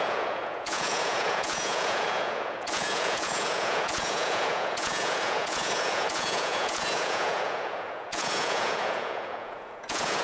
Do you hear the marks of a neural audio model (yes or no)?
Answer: yes